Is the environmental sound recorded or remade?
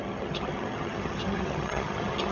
remade